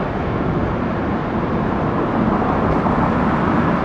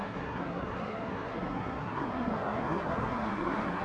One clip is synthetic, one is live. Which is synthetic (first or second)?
second